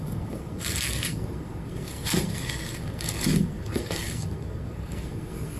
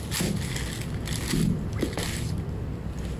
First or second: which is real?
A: second